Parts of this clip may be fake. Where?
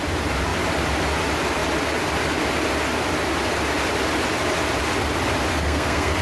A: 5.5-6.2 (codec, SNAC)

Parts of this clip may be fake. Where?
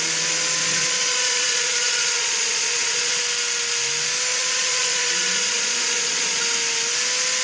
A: 0.6-3.2 (vocoder, Vocos); 4.3-6.4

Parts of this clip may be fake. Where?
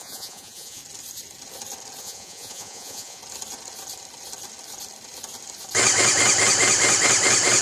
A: 0.0-0.8 (vocoder, Vocos); 2.0-3.2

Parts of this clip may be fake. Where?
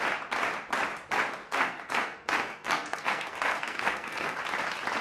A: 1.4-4.4 (codec, SNAC)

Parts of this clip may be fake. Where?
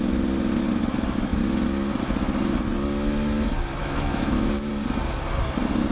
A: 3.8-4.7 (autoencoder, DAC-VAE)